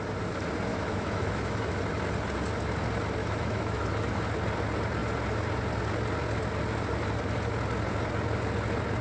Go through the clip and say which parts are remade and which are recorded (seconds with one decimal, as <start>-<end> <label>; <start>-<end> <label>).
0.0-0.7 recorded; 0.7-1.8 remade; 1.8-3.2 recorded; 3.2-4.2 remade; 4.2-9.0 recorded